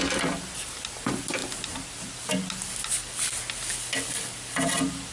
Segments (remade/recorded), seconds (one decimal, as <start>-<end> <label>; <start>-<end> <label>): 0.0-5.1 recorded